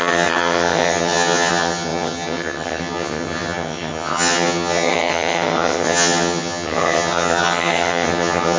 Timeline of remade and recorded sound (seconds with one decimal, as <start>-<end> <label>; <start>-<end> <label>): 0.0-8.6 remade

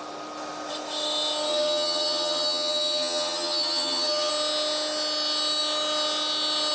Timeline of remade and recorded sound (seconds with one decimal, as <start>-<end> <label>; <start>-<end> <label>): 0.0-1.5 recorded; 1.5-4.3 remade; 4.3-6.7 recorded